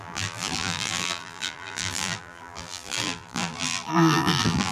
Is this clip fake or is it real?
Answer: fake